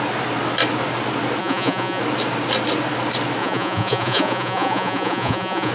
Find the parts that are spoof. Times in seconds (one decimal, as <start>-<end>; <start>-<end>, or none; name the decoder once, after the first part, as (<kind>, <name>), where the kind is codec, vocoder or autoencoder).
1.4-2.0 (vocoder, Vocos); 3.4-5.7